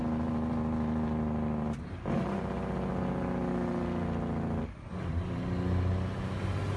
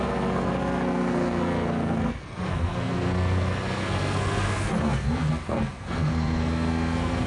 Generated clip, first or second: second